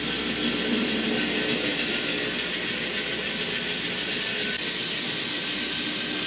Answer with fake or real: real